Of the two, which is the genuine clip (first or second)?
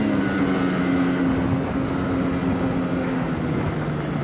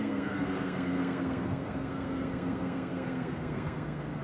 first